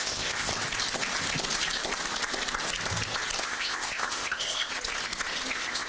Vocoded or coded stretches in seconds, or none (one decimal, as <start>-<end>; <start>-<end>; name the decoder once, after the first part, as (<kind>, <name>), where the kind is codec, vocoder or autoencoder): 0.0-0.5 (codec, ZipCodec); 3.4-4.7; 5.5-5.9